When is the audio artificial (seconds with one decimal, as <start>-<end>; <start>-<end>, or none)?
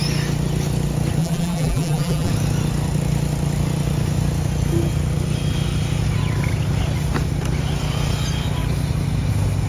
1.2-2.3